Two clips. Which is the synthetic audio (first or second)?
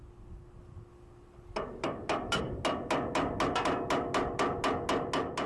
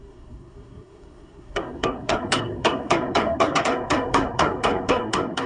second